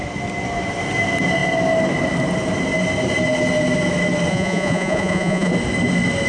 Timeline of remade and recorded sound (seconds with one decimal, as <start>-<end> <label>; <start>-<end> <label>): 0.0-4.3 recorded; 4.3-5.5 remade; 5.5-6.3 recorded